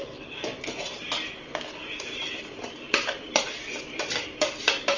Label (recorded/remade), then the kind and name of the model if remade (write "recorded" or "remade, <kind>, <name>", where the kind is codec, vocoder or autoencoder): remade, vocoder, BigVGAN v2